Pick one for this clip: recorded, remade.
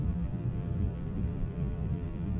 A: remade